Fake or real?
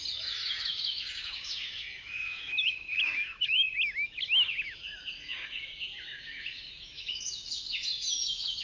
fake